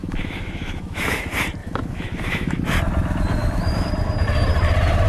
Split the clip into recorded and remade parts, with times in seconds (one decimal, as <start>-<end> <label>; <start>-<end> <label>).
0.0-1.2 remade; 1.2-1.6 recorded; 1.6-2.6 remade; 2.6-3.4 recorded; 3.4-3.9 remade; 3.9-5.1 recorded